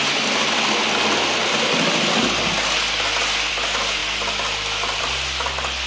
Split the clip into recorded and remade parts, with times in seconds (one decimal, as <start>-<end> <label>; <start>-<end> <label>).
0.0-5.9 recorded

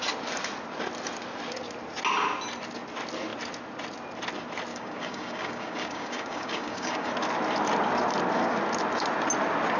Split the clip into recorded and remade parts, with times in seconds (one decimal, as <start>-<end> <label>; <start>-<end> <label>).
0.0-4.7 recorded; 4.7-7.1 remade; 7.1-9.8 recorded

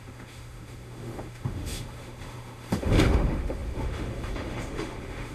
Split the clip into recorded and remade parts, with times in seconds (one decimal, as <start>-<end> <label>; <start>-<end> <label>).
0.0-5.3 remade

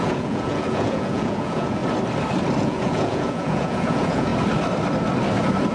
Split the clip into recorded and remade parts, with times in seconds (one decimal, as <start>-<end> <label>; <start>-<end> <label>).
0.0-1.8 remade; 1.8-2.6 recorded; 2.6-4.3 remade; 4.3-5.7 recorded

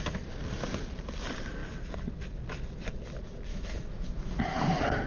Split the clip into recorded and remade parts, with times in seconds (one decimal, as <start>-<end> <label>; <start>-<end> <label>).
0.0-3.5 recorded; 3.5-4.4 remade; 4.4-5.1 recorded

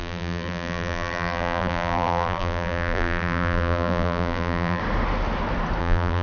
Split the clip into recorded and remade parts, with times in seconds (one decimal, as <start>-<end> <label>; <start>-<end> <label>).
0.0-4.8 remade; 4.8-5.8 recorded; 5.8-6.2 remade